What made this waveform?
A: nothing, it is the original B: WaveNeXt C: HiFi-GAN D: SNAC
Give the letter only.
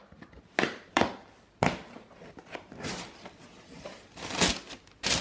A